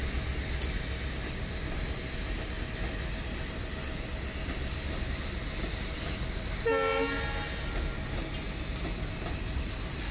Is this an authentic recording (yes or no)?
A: yes